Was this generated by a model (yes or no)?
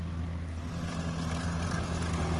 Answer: no